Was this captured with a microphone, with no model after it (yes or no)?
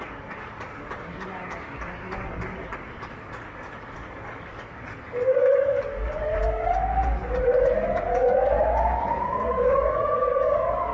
no